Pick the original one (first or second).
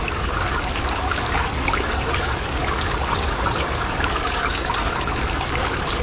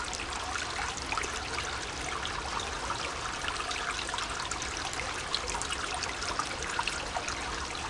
second